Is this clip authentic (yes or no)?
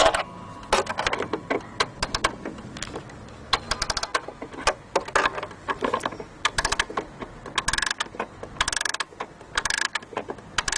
yes